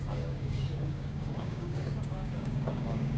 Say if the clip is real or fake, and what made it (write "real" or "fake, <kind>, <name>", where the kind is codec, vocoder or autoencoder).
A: fake, codec, DAC